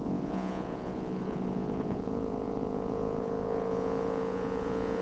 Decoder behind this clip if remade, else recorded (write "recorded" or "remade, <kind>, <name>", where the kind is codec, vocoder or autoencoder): remade, vocoder, Vocos